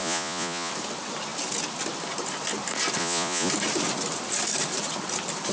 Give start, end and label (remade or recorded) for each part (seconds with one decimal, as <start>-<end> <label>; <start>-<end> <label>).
0.0-0.7 remade; 0.7-3.0 recorded; 3.0-3.5 remade; 3.5-5.5 recorded